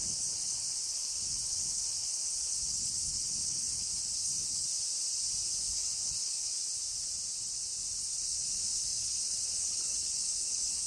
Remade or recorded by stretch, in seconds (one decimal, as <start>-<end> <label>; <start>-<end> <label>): 0.0-4.7 remade; 4.7-5.6 recorded; 5.6-6.5 remade; 6.5-8.0 recorded; 8.0-10.9 remade